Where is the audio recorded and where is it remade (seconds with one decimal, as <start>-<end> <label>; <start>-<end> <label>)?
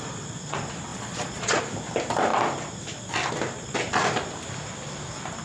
0.0-0.9 recorded; 0.9-1.6 remade; 1.6-5.4 recorded